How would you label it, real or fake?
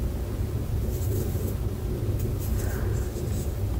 real